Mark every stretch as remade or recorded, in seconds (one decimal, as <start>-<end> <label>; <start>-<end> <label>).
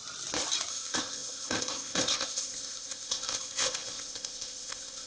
0.0-0.7 recorded; 0.7-5.1 remade